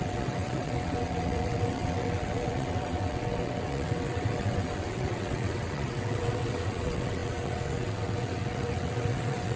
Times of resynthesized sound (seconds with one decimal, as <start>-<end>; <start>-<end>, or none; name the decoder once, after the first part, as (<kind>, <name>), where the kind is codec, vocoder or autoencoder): 0.0-9.6 (vocoder, WaveNeXt)

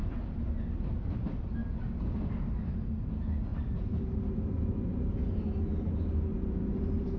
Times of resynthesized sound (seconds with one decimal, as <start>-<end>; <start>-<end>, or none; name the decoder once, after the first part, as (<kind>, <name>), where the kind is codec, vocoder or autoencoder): 0.0-1.1 (vocoder, BigVGAN v2); 3.5-4.8

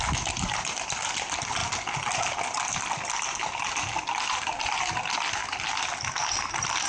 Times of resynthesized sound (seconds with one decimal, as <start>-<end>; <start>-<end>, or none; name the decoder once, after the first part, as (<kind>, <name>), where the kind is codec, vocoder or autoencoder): 5.4-6.1 (vocoder, BigVGAN v2)

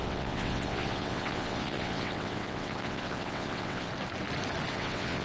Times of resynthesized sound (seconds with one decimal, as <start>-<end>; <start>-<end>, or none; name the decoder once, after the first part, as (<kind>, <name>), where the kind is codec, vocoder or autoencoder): 0.0-3.9 (vocoder, WaveNeXt); 4.7-5.2